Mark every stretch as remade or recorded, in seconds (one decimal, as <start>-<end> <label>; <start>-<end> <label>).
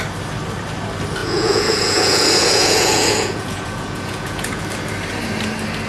0.0-1.2 recorded; 1.2-4.7 remade; 4.7-5.9 recorded